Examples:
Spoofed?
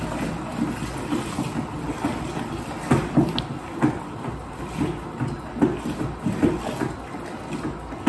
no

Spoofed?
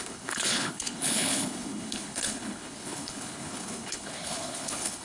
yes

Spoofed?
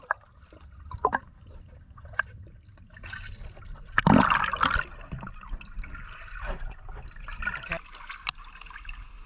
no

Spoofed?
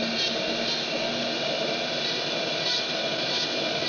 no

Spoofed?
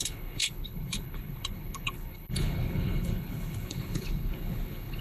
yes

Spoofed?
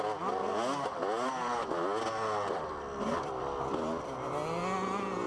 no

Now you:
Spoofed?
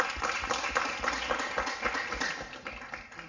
no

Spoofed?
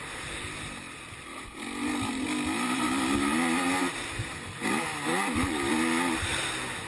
no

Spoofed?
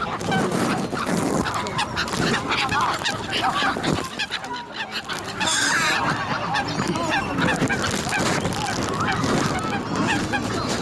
no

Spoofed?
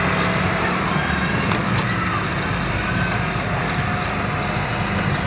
no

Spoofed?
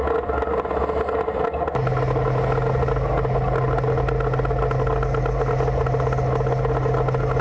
no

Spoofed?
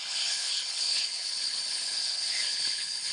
yes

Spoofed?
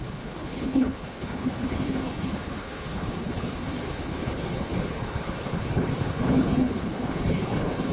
yes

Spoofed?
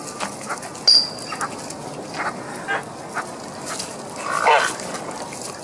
no